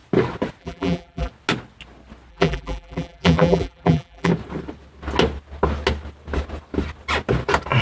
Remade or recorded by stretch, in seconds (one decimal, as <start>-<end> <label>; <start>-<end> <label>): 0.0-0.6 recorded; 0.6-1.3 remade; 1.3-2.3 recorded; 2.3-4.3 remade; 4.3-7.8 recorded

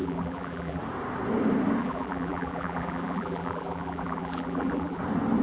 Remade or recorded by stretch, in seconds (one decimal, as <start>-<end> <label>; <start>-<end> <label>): 0.0-0.8 remade; 0.8-1.8 recorded; 1.8-5.0 remade; 5.0-5.4 recorded